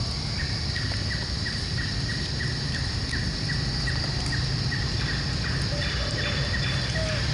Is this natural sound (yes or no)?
yes